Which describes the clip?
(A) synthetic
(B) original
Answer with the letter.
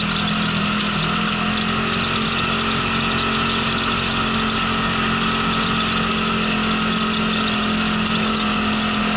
B